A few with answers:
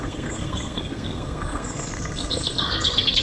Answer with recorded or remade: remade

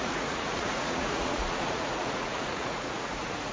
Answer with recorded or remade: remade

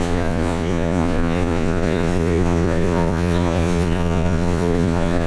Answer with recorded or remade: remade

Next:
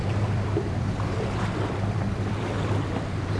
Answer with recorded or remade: remade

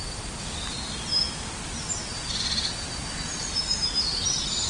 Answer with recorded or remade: recorded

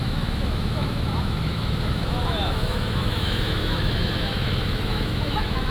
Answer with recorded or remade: remade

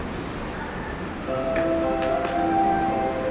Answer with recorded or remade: recorded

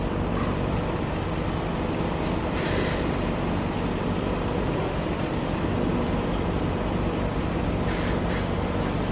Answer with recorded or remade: remade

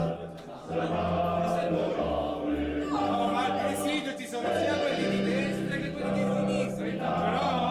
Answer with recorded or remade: recorded